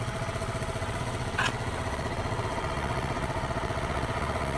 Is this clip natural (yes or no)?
no